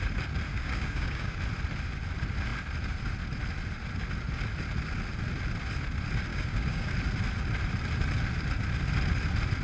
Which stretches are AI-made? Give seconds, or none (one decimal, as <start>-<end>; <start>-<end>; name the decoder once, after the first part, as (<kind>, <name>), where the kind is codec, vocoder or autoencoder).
0.5-1.4 (codec, DAC); 6.3-6.9